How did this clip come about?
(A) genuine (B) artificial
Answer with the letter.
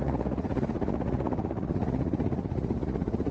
B